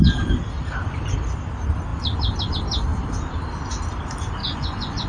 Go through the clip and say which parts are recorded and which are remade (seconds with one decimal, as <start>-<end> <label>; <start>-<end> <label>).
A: 0.0-4.4 recorded; 4.4-5.1 remade